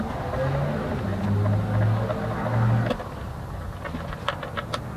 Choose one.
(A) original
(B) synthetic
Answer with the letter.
A